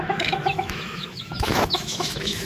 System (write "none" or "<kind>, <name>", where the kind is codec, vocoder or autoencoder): autoencoder, DAC-VAE